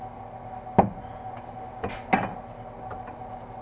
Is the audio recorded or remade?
recorded